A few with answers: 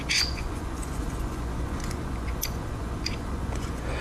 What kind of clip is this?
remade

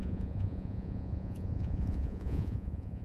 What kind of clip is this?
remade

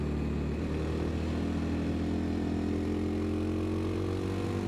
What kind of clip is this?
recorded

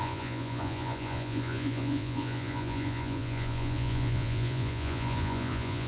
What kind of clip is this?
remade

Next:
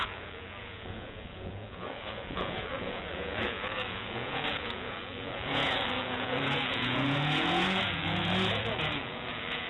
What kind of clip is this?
remade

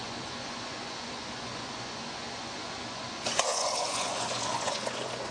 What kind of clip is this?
remade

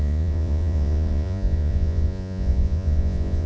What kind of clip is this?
remade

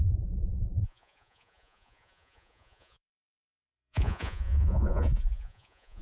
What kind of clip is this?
remade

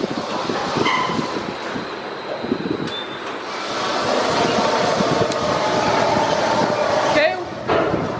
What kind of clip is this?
recorded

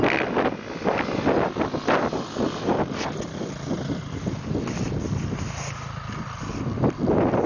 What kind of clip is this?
recorded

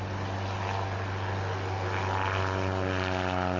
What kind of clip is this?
recorded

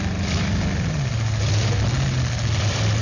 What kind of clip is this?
recorded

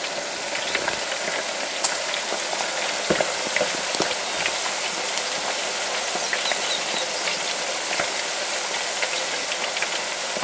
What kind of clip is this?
recorded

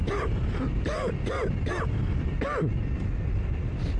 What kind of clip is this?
recorded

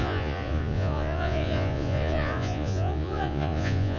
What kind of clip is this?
remade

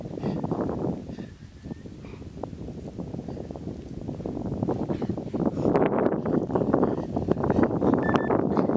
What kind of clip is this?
recorded